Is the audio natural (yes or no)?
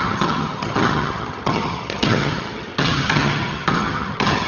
no